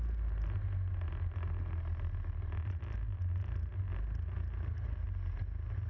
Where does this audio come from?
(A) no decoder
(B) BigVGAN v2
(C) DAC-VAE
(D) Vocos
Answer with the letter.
A